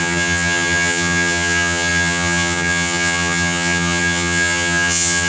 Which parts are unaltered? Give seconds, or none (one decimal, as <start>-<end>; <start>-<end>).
none